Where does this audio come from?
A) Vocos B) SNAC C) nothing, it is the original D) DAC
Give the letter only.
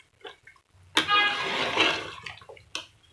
C